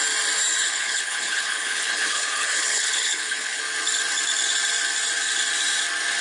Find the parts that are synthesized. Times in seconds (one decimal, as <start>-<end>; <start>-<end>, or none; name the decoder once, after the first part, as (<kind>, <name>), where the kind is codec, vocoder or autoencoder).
0.6-3.6 (codec, HILCodec)